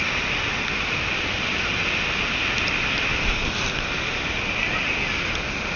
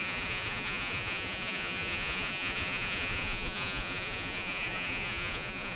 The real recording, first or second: first